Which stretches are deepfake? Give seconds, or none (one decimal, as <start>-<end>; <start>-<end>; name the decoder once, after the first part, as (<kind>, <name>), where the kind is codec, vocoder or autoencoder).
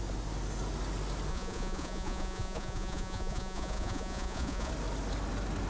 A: 1.3-4.7 (vocoder, Vocos)